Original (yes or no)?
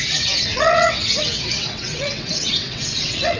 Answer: no